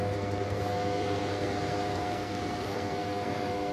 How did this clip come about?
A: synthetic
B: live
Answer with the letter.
A